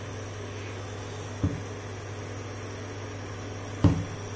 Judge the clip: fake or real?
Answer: real